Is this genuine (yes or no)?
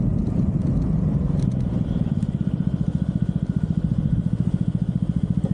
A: yes